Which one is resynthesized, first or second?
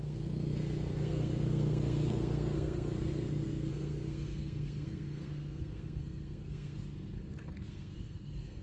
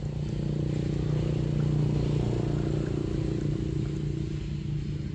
first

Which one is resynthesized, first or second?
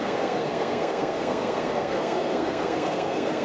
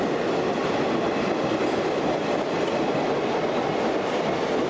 first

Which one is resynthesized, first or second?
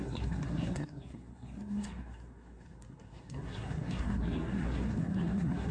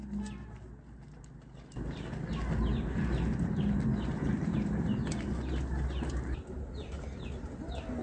first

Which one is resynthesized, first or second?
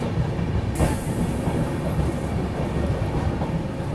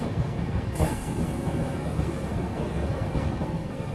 second